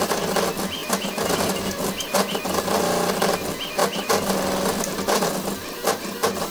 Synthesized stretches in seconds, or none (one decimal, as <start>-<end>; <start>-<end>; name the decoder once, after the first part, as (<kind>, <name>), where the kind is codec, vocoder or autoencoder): none